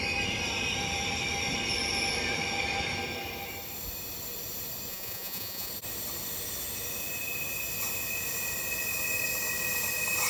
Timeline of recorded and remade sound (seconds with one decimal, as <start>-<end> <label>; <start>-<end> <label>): 0.0-4.9 recorded; 4.9-5.7 remade; 5.7-10.3 recorded